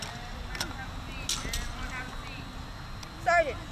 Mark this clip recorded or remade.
recorded